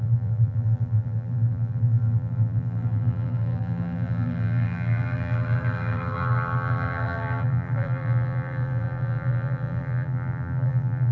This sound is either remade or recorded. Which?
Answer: remade